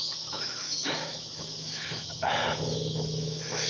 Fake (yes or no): yes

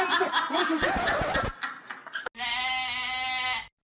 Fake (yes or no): no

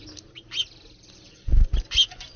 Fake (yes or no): no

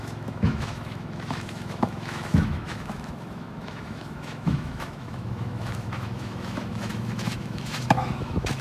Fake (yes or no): yes